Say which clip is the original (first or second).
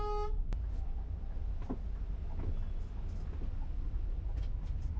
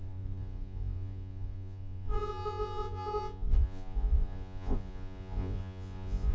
first